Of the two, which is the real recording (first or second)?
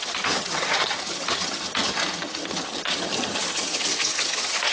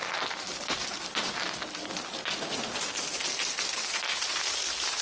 second